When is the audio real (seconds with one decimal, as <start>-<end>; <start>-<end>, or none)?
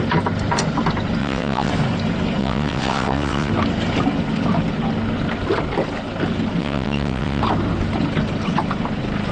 0.0-1.2; 1.7-2.4; 3.5-6.6; 7.4-9.3